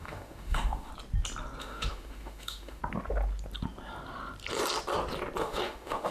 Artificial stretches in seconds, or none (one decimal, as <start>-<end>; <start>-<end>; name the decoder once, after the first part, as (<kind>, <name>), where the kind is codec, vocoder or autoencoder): 0.0-0.9 (autoencoder, DAC-VAE); 1.6-2.8; 5.4-6.1